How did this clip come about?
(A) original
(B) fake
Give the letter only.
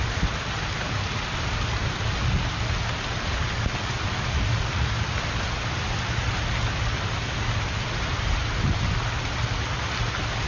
A